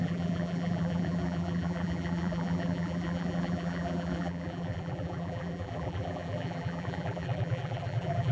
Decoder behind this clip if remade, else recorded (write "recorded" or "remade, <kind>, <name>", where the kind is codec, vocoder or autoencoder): remade, vocoder, BigVGAN v2